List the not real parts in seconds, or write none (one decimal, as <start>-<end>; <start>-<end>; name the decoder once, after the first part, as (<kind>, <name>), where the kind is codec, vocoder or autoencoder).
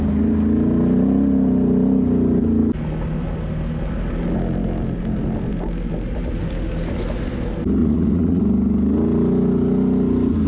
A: 7.8-8.4 (vocoder, Vocos)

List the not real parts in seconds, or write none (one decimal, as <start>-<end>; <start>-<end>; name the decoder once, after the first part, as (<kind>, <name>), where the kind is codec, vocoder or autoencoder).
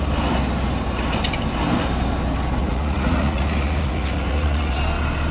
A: 2.6-4.8 (vocoder, Vocos)